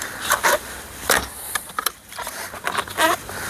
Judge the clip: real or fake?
real